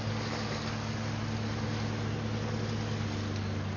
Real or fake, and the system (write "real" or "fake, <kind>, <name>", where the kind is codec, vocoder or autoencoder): real